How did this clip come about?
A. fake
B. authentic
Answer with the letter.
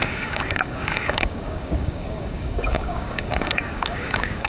A